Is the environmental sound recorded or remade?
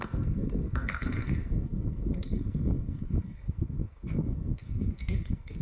remade